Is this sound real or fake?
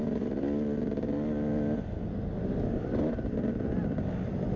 real